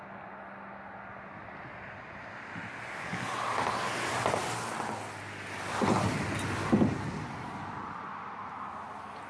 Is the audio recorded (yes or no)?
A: yes